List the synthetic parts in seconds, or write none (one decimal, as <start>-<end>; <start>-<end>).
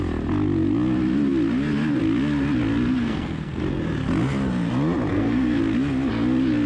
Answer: 3.0-3.6; 5.1-5.6